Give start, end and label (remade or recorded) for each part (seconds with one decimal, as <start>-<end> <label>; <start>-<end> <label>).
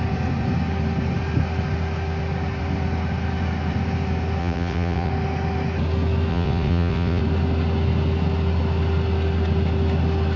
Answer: 0.0-4.4 recorded; 4.4-5.1 remade; 5.1-6.3 recorded; 6.3-7.2 remade; 7.2-10.4 recorded